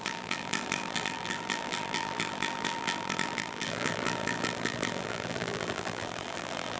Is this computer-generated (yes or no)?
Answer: yes